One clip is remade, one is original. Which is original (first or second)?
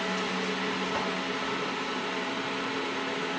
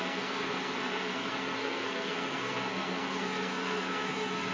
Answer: first